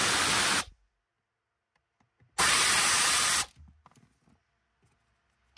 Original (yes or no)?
yes